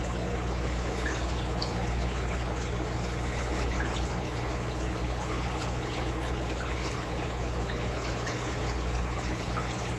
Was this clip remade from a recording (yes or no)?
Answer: yes